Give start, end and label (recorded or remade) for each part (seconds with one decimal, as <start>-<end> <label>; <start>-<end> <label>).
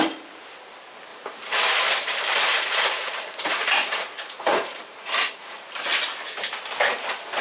0.0-1.1 recorded; 1.1-1.6 remade; 1.6-2.5 recorded; 2.5-5.7 remade; 5.7-7.4 recorded